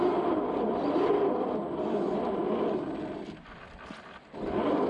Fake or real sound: real